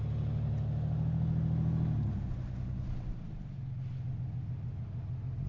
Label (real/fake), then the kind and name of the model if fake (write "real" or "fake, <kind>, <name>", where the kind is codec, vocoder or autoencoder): real